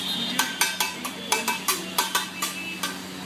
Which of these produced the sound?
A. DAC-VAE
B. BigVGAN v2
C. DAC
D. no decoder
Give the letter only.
D